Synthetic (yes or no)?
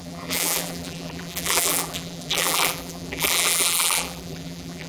yes